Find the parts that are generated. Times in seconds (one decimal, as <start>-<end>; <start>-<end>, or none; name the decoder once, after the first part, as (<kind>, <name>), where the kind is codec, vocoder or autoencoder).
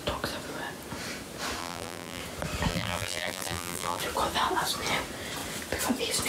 1.6-2.2 (vocoder, BigVGAN v2); 2.7-4.0